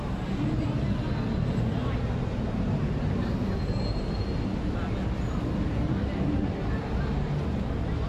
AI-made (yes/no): no